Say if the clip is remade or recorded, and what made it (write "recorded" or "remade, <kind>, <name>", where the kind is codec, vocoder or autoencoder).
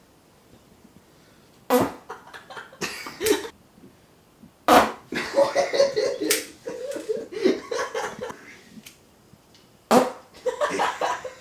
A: recorded